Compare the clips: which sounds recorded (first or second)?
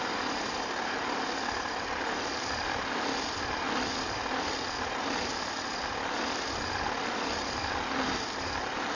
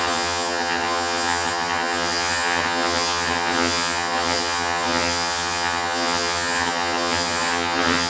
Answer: first